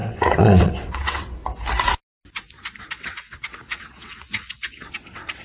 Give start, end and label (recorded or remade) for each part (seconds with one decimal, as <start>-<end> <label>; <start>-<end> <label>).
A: 0.0-1.4 remade; 1.4-2.8 recorded; 2.8-5.4 remade